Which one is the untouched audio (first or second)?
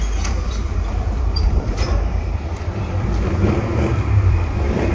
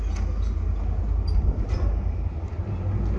second